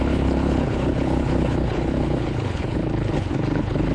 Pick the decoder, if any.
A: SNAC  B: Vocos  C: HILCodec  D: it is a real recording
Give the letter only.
C